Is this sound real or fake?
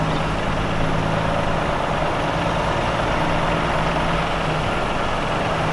real